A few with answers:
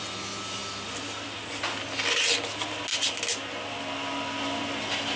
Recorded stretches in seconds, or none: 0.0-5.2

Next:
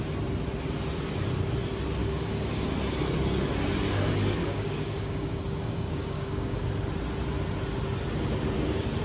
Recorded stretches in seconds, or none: 0.0-2.0; 2.6-4.4; 6.7-9.0

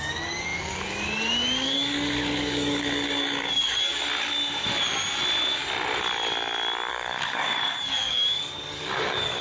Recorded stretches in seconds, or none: 3.9-6.9

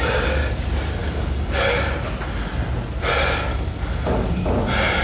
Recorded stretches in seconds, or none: 0.0-1.0; 1.7-3.5; 4.5-5.0

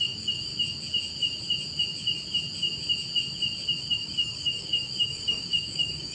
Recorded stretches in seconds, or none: 0.5-3.8

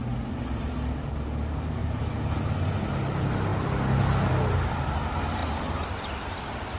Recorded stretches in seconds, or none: 0.0-6.8

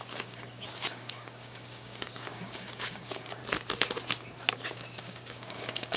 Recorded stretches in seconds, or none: 3.4-4.5

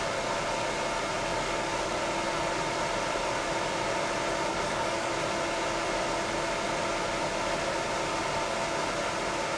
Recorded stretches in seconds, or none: 0.0-1.3; 2.0-4.5; 5.1-9.6